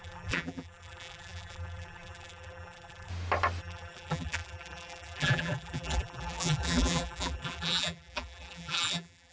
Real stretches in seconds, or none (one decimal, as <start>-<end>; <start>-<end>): 3.1-3.6